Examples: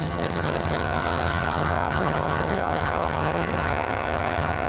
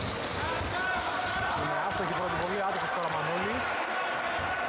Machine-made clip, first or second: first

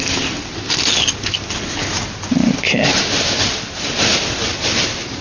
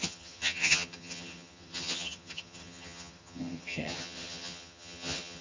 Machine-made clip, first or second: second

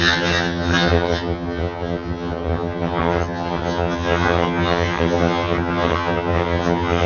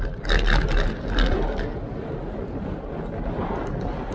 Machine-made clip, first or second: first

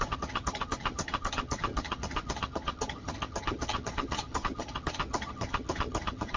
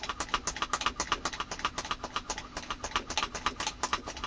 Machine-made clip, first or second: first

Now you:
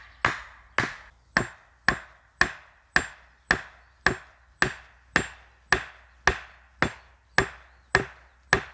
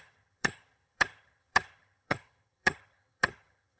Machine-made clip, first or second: second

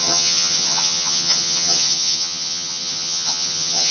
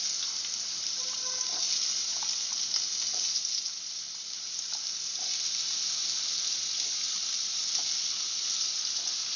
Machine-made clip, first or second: first